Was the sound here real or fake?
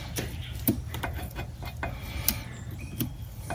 real